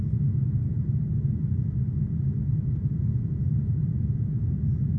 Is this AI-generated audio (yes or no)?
no